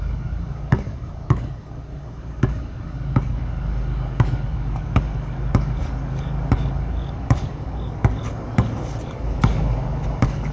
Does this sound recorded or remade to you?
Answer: remade